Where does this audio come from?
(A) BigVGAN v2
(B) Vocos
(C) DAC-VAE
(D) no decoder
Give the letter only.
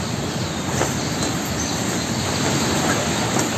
D